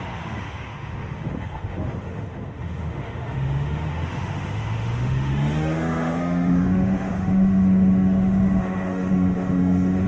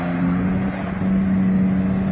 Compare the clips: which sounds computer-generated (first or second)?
first